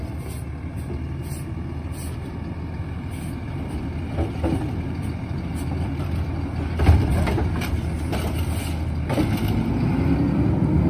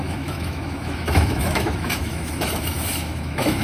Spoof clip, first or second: second